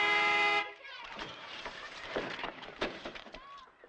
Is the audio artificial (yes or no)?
yes